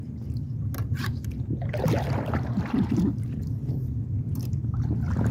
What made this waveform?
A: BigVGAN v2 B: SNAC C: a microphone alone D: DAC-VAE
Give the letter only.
C